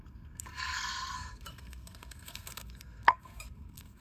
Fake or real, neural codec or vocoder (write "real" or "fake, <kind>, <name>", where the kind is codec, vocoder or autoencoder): fake, codec, SNAC